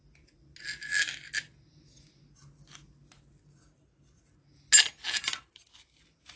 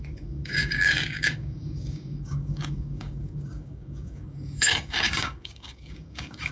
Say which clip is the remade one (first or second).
second